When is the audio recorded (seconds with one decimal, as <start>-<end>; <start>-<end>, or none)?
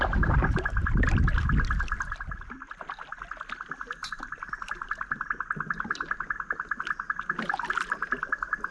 0.0-8.7